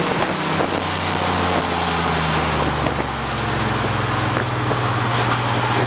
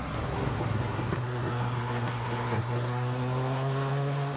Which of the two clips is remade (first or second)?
second